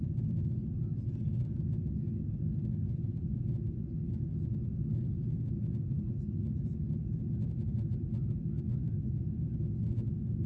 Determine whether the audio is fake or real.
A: real